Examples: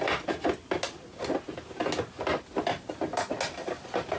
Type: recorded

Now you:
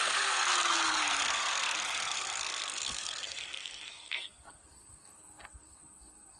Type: remade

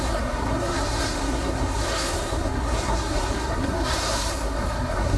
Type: remade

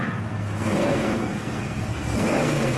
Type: remade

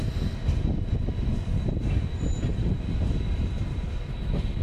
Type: recorded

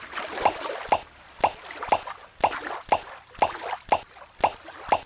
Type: recorded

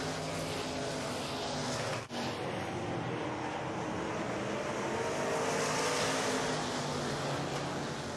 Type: recorded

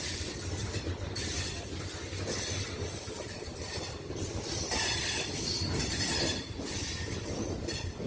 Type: recorded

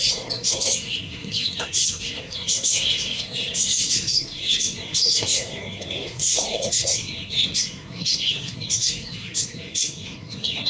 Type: remade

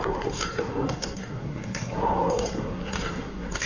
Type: remade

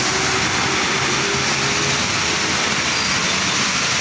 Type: recorded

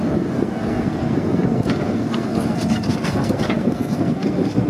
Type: remade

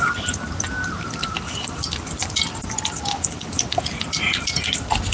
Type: recorded